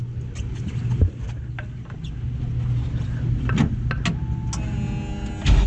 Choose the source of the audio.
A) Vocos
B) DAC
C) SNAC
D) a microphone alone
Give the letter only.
D